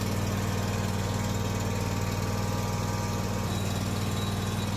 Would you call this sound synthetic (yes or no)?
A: no